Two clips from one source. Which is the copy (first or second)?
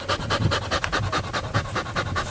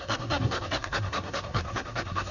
second